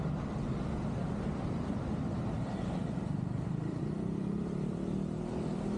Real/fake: fake